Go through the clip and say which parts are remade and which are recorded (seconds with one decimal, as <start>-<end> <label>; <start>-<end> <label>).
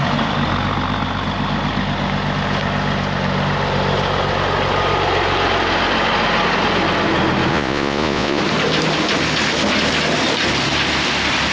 0.0-7.5 recorded; 7.5-8.4 remade; 8.4-11.5 recorded